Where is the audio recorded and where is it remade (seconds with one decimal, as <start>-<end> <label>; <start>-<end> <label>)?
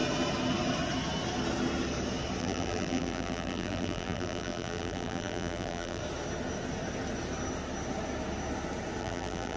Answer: 0.0-2.4 recorded; 2.4-6.0 remade; 6.0-9.0 recorded; 9.0-9.6 remade